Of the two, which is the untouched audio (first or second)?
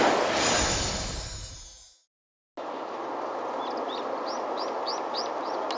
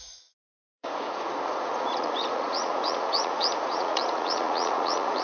first